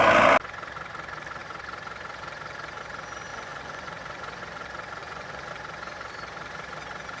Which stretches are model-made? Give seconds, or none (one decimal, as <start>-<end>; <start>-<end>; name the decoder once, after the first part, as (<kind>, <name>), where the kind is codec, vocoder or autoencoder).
3.3-4.4 (vocoder, Vocos); 5.0-5.5